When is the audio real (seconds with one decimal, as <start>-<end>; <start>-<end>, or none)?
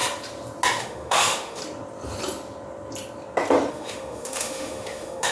0.0-0.8; 1.6-3.7